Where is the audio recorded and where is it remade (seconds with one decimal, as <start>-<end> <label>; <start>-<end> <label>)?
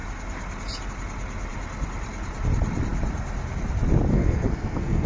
0.0-4.1 recorded; 4.1-5.1 remade